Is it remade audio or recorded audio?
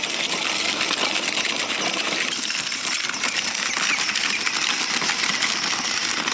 remade